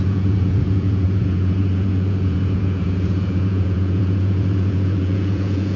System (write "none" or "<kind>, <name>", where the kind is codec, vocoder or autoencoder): vocoder, Vocos